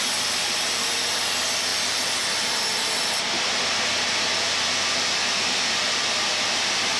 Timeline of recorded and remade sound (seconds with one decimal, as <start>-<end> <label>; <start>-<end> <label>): 0.0-7.0 recorded